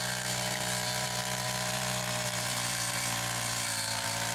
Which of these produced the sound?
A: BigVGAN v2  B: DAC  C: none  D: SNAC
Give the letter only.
A